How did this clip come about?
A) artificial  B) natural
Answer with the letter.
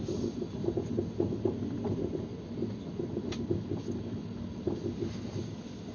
B